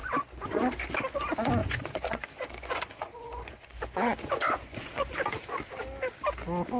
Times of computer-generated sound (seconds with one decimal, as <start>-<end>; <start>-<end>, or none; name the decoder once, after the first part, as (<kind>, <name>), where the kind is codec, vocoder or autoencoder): 0.0-0.6 (vocoder, Vocos); 1.6-5.1